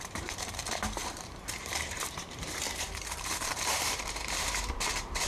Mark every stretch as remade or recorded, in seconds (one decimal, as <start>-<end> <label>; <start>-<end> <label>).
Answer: 0.0-5.3 remade